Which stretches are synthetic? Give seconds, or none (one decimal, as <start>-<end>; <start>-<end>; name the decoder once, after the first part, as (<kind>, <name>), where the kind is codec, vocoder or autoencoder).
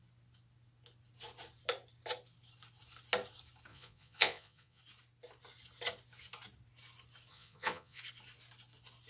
3.7-4.8 (vocoder, Vocos); 7.3-8.0